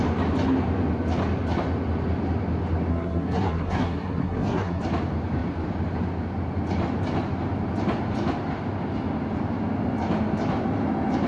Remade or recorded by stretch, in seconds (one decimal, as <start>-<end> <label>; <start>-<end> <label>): 0.0-2.9 recorded; 2.9-4.8 remade; 4.8-11.3 recorded